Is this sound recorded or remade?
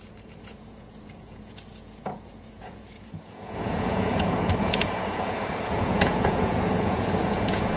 remade